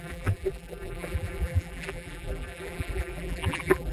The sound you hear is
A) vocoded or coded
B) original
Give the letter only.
A